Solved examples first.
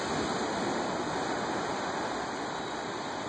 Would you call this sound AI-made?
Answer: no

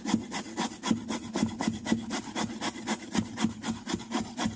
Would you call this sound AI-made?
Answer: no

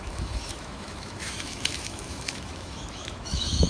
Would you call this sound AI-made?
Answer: yes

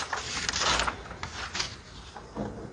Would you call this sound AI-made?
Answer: no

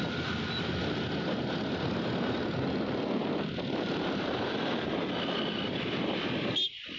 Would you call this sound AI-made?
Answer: no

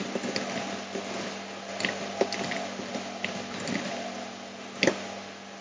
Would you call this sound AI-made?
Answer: no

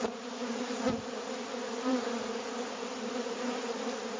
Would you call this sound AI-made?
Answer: yes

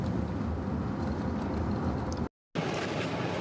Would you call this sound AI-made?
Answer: no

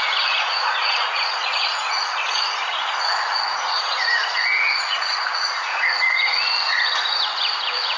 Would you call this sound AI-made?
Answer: yes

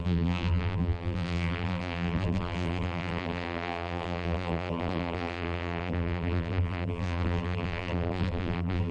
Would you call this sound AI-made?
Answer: yes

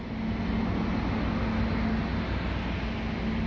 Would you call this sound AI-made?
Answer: no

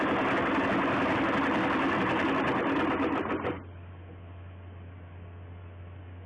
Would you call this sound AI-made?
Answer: no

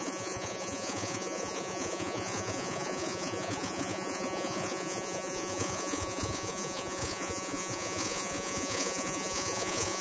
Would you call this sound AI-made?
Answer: yes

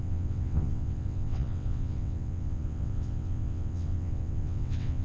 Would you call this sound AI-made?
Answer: yes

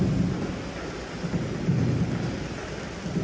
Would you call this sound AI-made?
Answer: no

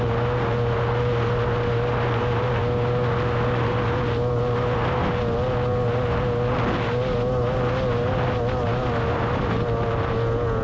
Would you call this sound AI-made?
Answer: no